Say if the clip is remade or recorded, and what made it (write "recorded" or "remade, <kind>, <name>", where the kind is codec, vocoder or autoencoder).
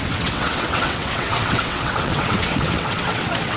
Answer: remade, vocoder, WaveNeXt